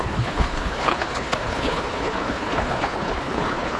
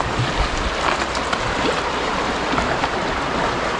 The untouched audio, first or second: second